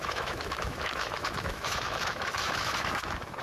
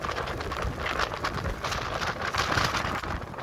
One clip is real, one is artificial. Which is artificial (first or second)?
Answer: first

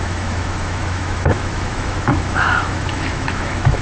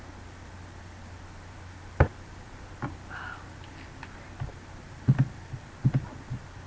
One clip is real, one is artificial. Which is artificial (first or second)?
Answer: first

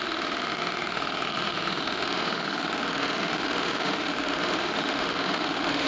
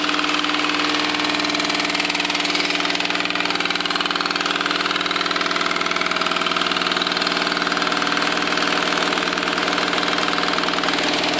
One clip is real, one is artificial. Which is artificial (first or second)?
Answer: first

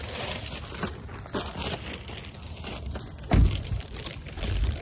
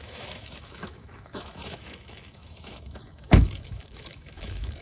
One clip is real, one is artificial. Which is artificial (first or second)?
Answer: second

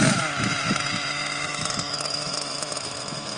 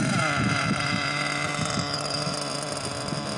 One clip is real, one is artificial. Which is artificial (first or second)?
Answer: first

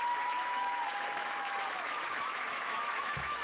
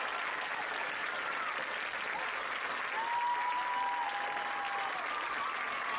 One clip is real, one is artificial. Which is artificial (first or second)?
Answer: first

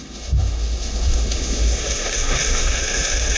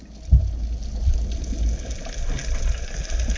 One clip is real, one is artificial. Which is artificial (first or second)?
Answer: first